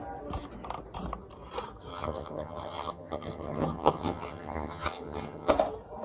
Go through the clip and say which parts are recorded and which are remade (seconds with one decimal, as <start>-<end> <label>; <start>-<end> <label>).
0.0-1.9 recorded; 1.9-5.5 remade; 5.5-6.0 recorded